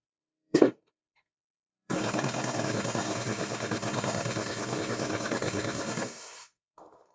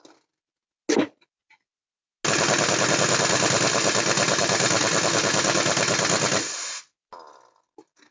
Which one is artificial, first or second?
first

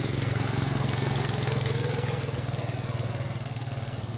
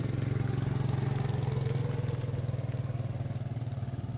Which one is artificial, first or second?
first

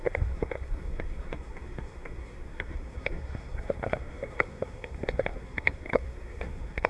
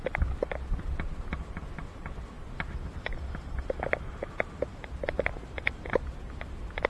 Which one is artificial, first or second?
first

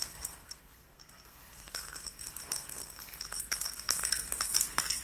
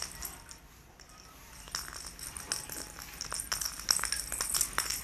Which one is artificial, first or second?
first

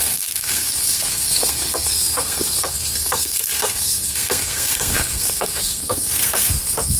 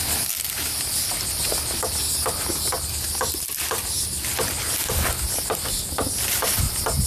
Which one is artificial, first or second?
first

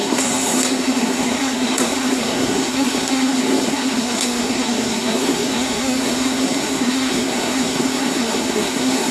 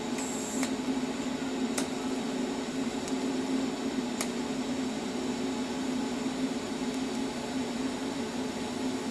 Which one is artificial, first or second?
first